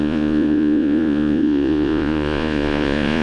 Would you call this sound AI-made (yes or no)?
yes